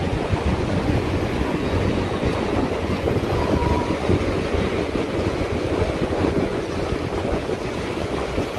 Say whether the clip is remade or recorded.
remade